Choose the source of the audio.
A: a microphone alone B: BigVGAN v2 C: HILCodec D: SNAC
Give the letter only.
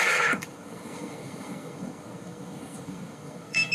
D